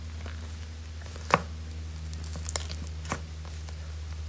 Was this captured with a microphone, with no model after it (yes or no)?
yes